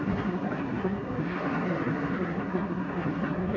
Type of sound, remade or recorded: remade